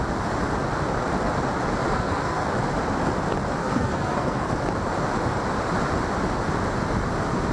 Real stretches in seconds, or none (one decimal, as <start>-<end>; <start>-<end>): 0.0-1.8; 2.5-3.6; 4.5-7.5